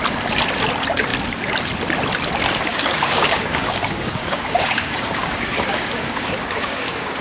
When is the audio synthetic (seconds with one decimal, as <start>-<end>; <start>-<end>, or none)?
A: 2.7-7.2